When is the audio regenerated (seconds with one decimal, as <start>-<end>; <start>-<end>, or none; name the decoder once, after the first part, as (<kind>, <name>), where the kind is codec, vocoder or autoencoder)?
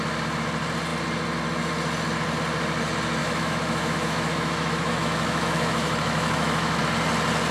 3.2-6.8 (autoencoder, DAC-VAE)